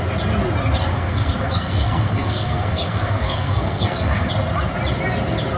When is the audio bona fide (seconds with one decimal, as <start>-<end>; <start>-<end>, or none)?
0.0-0.9; 4.3-5.6